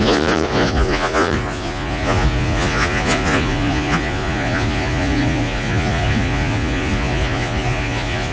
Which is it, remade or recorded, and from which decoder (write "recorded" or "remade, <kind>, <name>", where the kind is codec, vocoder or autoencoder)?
remade, vocoder, Vocos